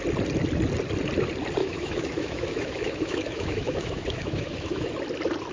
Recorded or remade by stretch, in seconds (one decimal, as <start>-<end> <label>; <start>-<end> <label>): 0.0-1.6 recorded; 1.6-4.9 remade; 4.9-5.5 recorded